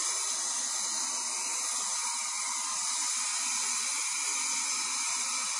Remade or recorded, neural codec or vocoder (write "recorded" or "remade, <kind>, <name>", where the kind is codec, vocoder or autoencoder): recorded